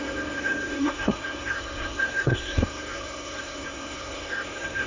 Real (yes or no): no